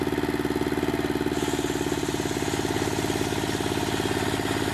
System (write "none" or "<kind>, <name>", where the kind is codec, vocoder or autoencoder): none